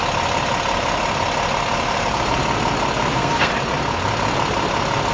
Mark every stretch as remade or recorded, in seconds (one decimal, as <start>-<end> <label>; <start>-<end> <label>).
0.0-3.1 recorded; 3.1-3.5 remade; 3.5-5.1 recorded